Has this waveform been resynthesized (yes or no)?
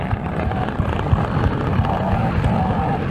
no